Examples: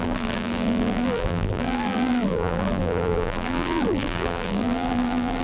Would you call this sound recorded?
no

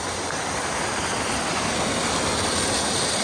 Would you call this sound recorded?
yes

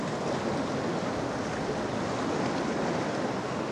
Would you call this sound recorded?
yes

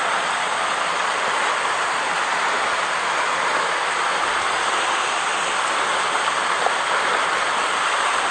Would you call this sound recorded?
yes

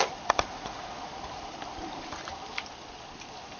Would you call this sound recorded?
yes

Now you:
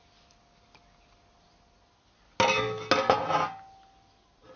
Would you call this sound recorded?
yes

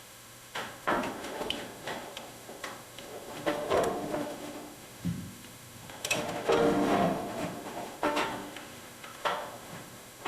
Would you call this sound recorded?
no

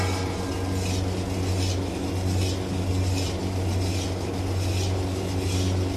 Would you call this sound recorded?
yes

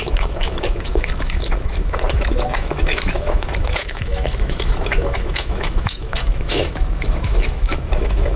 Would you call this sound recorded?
no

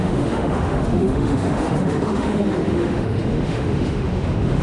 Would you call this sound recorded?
no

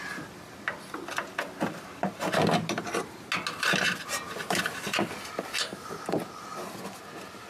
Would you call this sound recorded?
yes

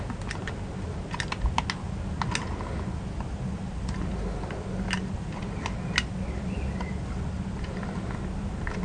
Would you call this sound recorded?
yes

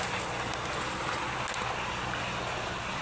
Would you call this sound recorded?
yes